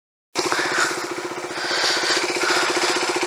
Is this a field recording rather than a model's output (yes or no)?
yes